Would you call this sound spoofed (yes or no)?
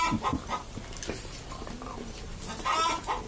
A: no